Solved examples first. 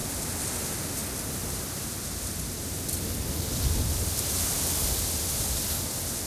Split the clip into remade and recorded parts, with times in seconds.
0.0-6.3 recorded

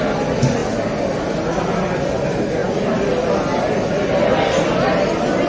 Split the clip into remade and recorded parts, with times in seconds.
0.0-5.5 recorded

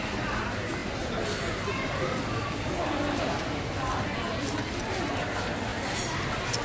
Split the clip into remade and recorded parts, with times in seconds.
0.0-6.6 recorded